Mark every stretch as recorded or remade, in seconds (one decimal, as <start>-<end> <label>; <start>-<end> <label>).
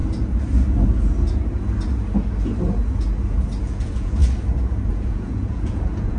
0.0-3.6 recorded; 3.6-4.2 remade; 4.2-4.9 recorded; 4.9-6.2 remade